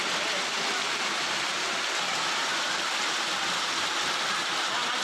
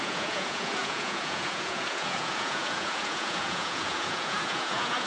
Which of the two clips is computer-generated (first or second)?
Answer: second